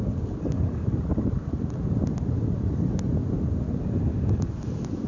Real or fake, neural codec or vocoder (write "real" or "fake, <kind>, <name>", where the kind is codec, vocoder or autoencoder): real